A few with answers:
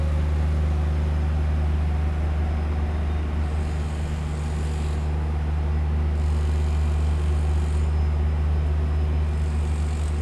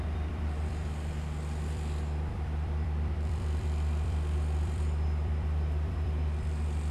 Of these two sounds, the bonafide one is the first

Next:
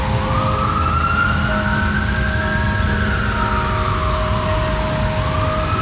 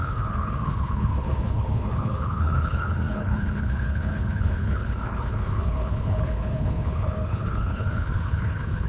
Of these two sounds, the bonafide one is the first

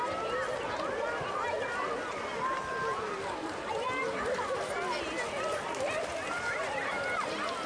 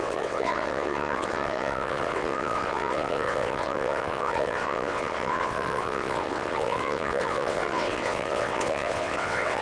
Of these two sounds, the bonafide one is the first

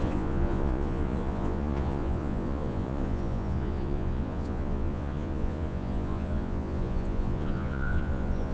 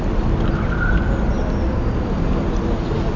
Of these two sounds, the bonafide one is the second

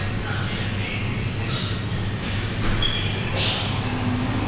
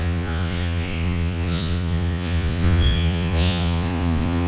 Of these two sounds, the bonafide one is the first